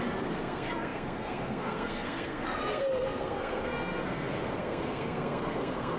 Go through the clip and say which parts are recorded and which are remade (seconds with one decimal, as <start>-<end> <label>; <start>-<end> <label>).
0.0-6.0 remade